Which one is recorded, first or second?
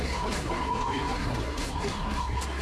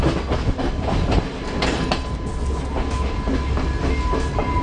second